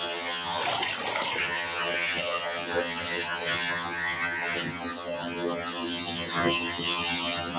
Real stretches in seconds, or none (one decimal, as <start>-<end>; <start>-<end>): 0.6-1.4